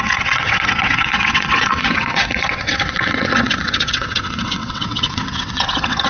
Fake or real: fake